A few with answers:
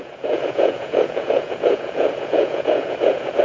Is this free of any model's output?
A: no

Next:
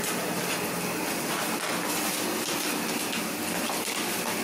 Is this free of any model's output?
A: yes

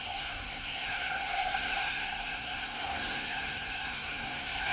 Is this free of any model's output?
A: no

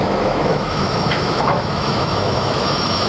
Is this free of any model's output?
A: no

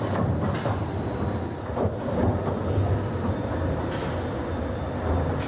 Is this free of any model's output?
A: yes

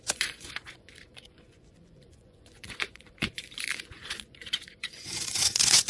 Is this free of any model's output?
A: no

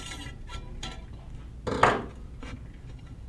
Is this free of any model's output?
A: yes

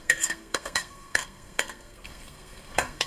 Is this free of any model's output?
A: no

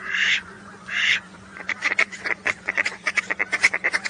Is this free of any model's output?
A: no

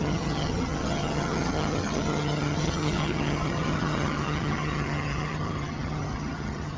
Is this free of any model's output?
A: no